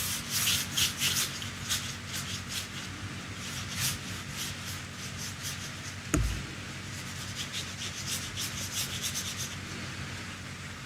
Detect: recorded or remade recorded